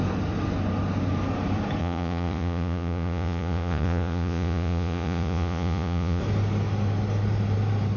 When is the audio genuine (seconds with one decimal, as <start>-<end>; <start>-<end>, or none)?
0.0-1.8; 6.2-8.0

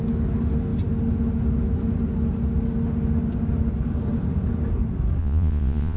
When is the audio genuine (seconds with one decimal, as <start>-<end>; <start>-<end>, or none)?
0.0-5.2

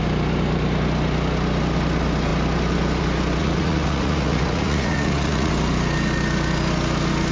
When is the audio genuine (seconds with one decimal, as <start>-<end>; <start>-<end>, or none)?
0.0-3.4; 5.5-7.3

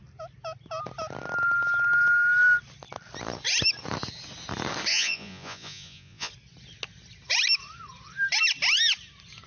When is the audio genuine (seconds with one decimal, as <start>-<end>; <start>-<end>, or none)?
0.0-4.9; 6.3-9.5

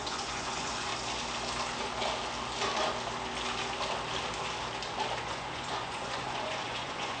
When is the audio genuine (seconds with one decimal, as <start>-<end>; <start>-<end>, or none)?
0.9-5.2

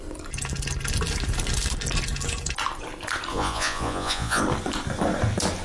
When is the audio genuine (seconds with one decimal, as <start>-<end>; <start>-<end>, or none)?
0.0-3.3; 4.4-5.6

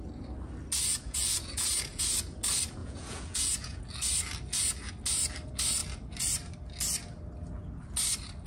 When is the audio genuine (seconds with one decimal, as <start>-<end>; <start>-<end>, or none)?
0.0-0.9; 2.0-2.8; 3.8-8.5

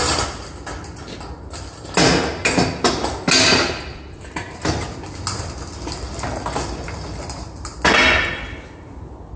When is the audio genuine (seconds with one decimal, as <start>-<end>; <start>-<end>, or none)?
0.0-3.9; 4.6-9.4